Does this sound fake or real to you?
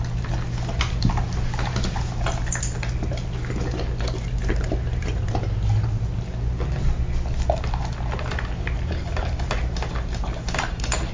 real